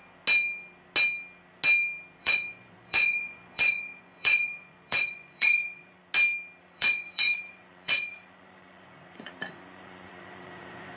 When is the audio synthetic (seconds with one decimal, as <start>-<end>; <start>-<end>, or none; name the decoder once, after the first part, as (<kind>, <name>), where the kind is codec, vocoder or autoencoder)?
2.2-6.0 (vocoder, Vocos); 6.6-11.0